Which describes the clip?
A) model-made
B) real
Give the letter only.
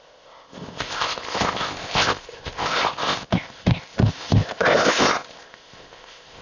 A